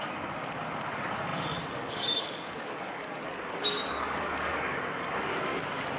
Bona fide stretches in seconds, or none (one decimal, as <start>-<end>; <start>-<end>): 5.5-6.0